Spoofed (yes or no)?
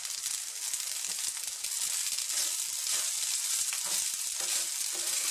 no